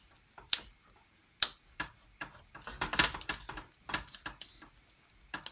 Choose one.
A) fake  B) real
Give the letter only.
B